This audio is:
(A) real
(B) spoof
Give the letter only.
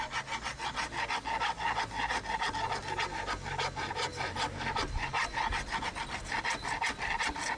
A